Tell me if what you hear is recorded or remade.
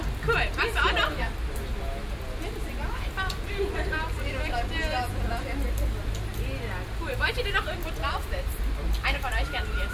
recorded